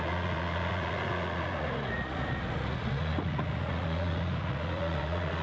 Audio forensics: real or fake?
fake